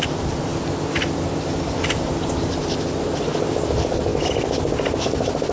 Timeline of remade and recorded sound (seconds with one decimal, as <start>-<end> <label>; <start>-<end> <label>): 0.0-5.5 recorded